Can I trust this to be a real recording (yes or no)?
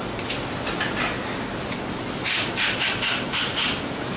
yes